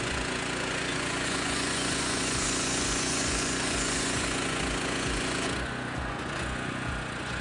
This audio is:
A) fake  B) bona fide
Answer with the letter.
A